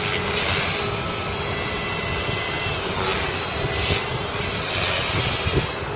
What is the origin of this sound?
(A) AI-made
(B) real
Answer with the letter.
B